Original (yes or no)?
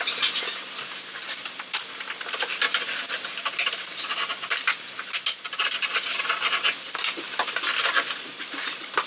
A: yes